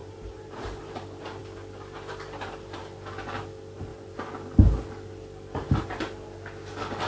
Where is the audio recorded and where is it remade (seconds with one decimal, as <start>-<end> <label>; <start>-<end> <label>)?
0.0-0.8 remade; 0.8-7.1 recorded